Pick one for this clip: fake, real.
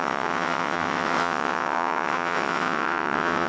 fake